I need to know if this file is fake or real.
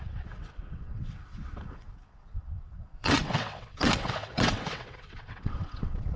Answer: fake